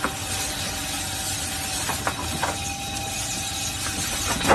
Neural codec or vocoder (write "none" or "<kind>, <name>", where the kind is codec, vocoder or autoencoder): none